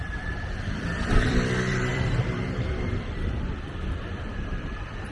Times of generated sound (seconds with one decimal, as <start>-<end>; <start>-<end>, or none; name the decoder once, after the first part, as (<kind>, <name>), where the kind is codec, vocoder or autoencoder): 0.0-5.1 (vocoder, BigVGAN v2)